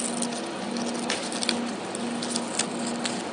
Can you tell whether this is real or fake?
real